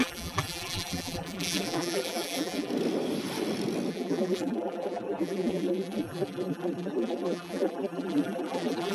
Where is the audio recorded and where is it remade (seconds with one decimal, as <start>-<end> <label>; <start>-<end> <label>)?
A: 0.0-2.7 remade; 2.7-3.9 recorded; 3.9-8.9 remade